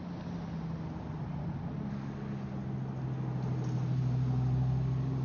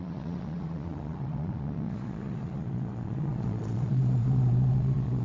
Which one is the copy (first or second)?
second